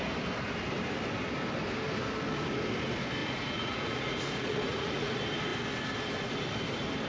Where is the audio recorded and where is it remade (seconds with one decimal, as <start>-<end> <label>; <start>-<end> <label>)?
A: 0.0-3.2 recorded; 3.2-5.1 remade; 5.1-7.1 recorded